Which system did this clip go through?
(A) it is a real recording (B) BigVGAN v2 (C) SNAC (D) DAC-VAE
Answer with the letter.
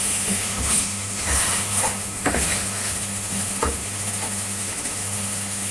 D